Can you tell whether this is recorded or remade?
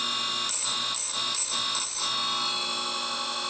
recorded